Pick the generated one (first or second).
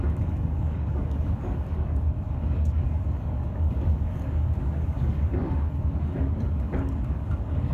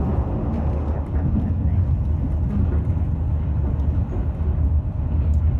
first